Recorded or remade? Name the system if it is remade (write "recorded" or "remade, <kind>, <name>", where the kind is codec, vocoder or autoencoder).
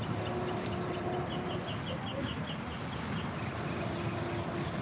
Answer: recorded